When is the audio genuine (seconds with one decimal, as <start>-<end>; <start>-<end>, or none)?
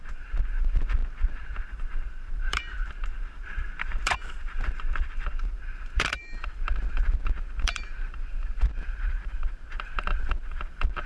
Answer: none